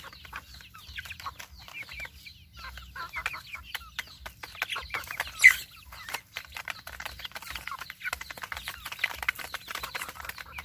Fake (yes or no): no